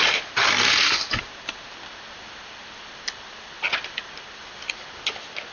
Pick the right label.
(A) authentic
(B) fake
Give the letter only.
A